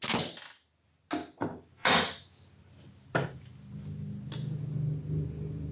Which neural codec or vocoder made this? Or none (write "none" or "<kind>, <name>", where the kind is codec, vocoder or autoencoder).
none